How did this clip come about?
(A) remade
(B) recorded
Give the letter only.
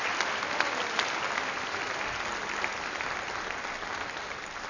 B